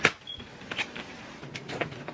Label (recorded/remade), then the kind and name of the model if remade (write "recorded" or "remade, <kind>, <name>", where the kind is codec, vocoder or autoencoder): recorded